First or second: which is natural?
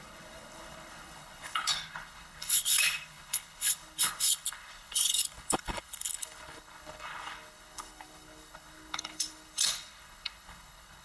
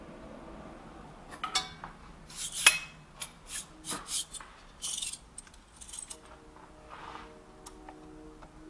second